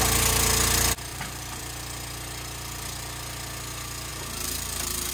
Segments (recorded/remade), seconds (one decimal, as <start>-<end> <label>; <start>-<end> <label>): 0.0-1.1 recorded; 1.1-1.6 remade; 1.6-4.1 recorded; 4.1-5.1 remade